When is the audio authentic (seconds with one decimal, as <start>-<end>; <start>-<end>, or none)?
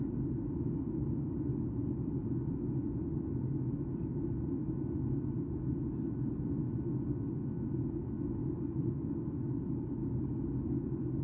0.0-8.4; 9.6-10.0